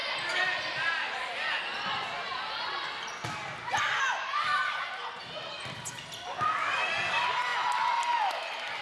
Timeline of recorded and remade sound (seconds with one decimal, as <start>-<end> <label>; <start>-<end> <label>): 0.0-8.8 recorded